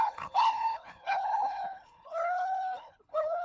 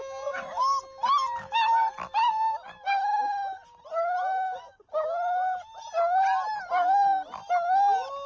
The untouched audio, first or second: second